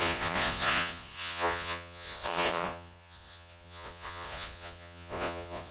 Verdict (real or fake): fake